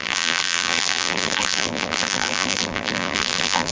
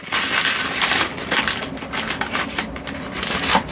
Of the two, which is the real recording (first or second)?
second